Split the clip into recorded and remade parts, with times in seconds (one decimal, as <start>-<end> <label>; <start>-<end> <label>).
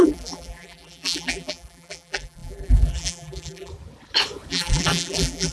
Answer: 0.0-3.7 remade; 3.7-4.5 recorded; 4.5-5.5 remade